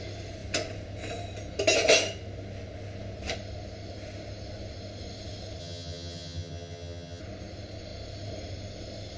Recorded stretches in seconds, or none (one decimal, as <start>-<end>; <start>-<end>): 0.0-5.6; 7.2-9.2

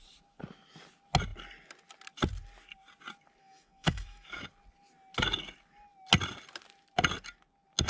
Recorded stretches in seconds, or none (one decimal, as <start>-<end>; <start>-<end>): 0.0-3.4; 4.5-7.9

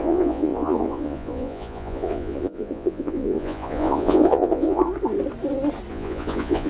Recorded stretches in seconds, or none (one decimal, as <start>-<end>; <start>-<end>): 4.8-5.9

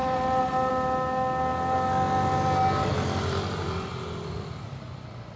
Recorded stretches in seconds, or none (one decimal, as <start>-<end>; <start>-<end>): 0.7-5.4

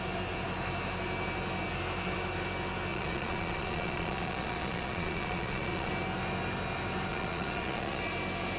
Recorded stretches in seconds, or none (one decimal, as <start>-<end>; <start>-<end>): 0.0-2.9; 5.9-7.1; 8.0-8.6

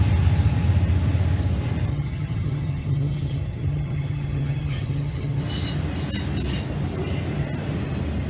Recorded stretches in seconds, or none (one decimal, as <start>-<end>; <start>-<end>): 0.0-1.9; 5.4-8.3

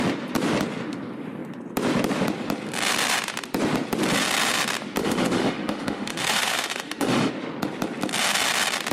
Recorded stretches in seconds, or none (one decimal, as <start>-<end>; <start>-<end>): 0.0-5.0; 7.3-8.9

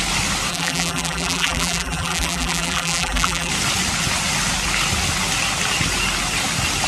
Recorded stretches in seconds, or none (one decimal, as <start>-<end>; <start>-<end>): 0.0-0.5; 3.5-6.9